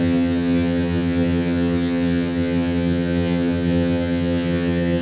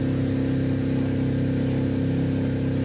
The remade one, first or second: first